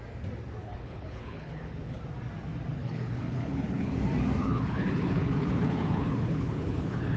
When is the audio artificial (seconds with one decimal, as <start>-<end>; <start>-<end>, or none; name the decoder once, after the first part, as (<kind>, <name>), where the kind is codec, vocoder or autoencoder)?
0.6-2.0 (codec, HILCodec); 2.7-3.9; 4.4-7.2